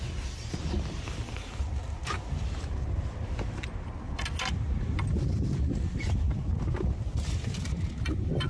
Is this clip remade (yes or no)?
no